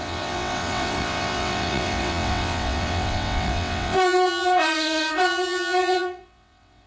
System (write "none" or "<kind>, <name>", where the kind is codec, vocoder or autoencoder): vocoder, WaveNeXt